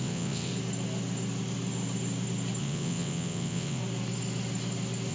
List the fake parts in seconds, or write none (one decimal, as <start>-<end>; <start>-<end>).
0.0-0.5; 2.6-3.8